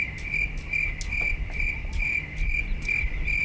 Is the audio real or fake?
real